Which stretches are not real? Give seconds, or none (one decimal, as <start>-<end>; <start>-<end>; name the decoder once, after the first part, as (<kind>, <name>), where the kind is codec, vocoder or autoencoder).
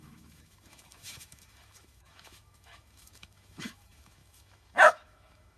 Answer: 0.0-5.6 (autoencoder, DAC-VAE)